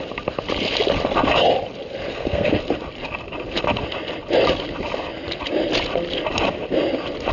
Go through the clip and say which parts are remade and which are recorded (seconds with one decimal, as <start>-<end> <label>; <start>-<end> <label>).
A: 0.0-2.1 recorded; 2.1-2.6 remade; 2.6-7.3 recorded

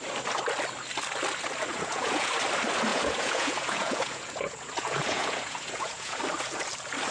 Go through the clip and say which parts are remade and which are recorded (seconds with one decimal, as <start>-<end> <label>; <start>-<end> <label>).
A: 0.0-1.7 recorded; 1.7-2.3 remade; 2.3-2.9 recorded; 2.9-6.2 remade; 6.2-7.1 recorded

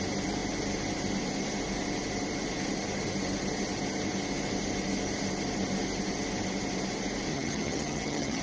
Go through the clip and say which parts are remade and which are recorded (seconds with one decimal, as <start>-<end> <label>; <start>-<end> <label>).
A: 0.0-7.3 recorded; 7.3-8.4 remade

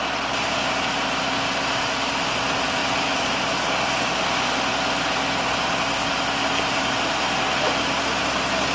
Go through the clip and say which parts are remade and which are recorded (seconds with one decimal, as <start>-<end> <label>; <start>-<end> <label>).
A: 0.0-8.7 recorded

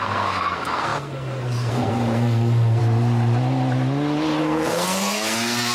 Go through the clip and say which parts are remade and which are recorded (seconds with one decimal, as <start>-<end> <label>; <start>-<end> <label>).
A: 0.0-2.8 remade; 2.8-4.4 recorded; 4.4-5.7 remade